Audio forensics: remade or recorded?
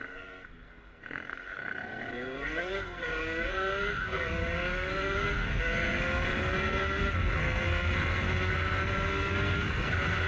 remade